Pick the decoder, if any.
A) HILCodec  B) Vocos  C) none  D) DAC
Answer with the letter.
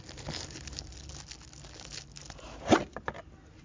C